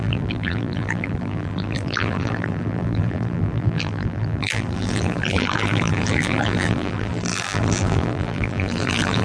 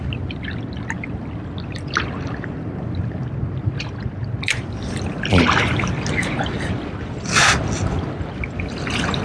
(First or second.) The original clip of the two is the second